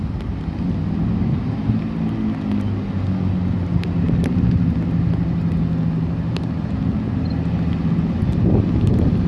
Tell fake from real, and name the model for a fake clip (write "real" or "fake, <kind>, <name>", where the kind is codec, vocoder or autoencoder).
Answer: real